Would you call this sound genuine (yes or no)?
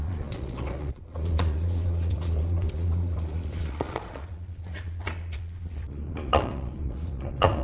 no